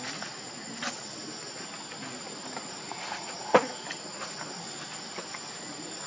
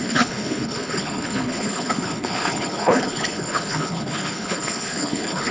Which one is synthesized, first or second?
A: second